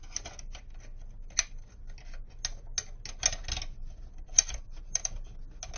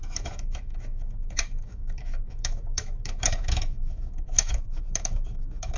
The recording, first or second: first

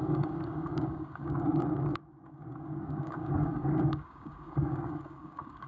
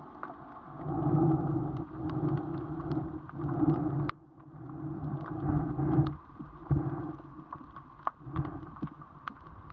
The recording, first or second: second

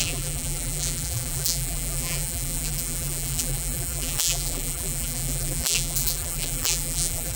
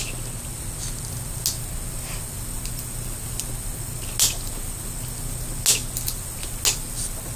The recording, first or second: second